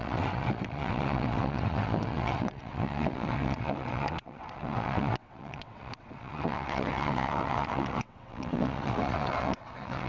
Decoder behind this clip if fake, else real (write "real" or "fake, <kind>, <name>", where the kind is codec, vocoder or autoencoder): fake, vocoder, WaveNeXt